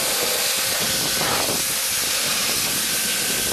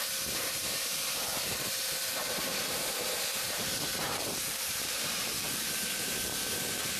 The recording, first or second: first